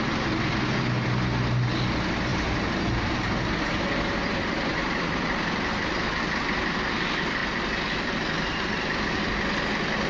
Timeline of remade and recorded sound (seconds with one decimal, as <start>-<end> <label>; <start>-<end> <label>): 0.0-2.3 recorded; 2.3-6.2 remade; 6.2-8.5 recorded; 8.5-9.3 remade; 9.3-10.1 recorded